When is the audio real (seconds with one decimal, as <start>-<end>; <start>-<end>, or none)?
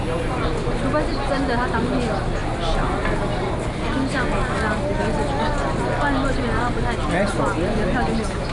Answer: 0.0-8.5